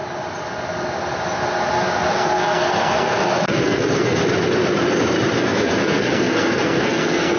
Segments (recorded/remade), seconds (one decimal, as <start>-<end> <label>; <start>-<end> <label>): 0.0-2.1 recorded; 2.1-4.2 remade; 4.2-5.4 recorded; 5.4-7.4 remade